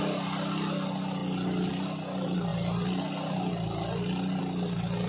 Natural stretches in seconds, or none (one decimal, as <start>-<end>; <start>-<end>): 0.0-5.1